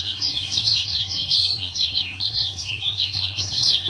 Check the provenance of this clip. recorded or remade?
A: remade